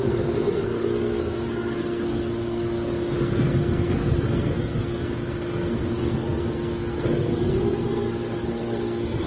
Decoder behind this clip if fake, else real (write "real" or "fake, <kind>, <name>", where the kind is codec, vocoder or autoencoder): fake, codec, SNAC